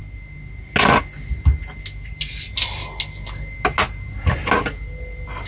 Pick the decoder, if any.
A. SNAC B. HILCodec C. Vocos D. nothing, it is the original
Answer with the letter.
D